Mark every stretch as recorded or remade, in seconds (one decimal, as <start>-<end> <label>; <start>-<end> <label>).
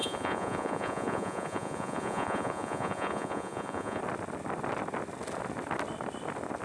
0.0-4.0 remade; 4.0-6.6 recorded